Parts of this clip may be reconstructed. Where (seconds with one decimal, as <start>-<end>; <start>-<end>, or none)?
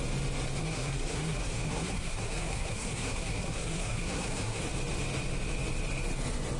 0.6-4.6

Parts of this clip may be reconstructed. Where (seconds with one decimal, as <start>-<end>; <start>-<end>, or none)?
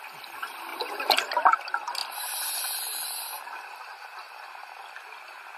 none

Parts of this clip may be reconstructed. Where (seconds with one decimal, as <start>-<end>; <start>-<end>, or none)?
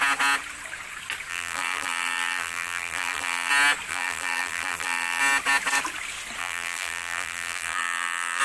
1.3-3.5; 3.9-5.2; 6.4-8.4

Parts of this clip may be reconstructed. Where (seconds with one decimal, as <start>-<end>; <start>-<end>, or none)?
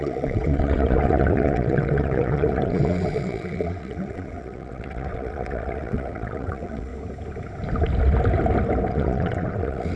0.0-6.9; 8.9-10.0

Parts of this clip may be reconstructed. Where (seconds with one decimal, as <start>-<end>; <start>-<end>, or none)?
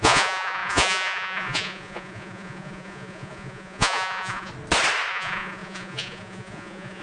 0.0-4.5; 5.1-7.0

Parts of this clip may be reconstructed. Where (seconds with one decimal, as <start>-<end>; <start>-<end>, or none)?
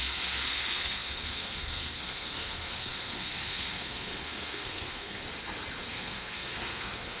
0.0-5.2; 5.9-7.2